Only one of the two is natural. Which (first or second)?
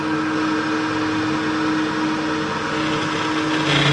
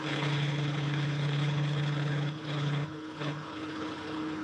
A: first